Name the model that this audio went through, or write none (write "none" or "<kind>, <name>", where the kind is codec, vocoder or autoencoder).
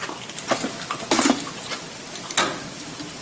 none